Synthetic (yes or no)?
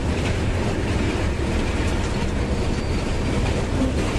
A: no